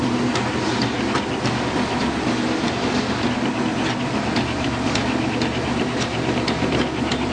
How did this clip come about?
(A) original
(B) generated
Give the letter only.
A